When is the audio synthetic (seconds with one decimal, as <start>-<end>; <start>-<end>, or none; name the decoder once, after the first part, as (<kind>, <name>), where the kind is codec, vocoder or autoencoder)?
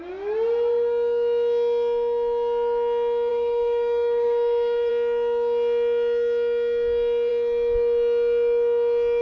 3.3-4.9 (codec, DAC)